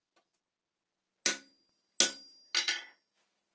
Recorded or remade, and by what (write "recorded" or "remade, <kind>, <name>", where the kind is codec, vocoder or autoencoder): recorded